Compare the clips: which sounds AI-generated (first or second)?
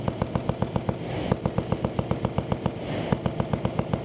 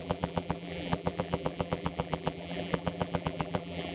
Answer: second